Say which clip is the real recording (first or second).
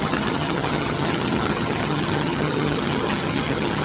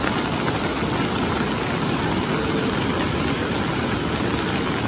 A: second